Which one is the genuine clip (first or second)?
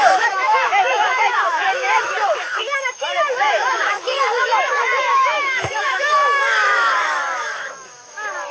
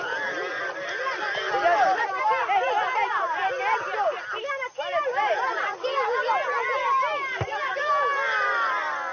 second